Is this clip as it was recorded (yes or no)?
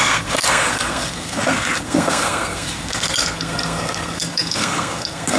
no